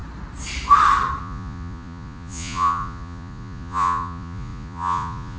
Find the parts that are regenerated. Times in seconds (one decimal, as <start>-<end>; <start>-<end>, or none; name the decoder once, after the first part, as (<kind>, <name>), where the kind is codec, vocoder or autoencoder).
1.2-5.4 (vocoder, Vocos)